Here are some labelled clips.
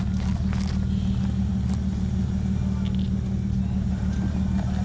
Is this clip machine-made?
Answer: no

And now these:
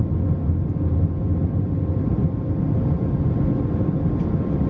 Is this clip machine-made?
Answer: no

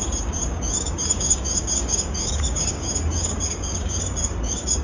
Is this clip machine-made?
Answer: yes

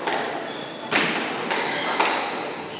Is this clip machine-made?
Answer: no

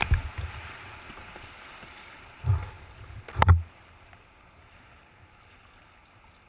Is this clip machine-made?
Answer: no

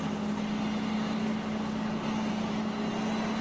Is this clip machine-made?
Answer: no